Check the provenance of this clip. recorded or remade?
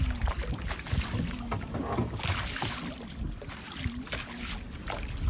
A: recorded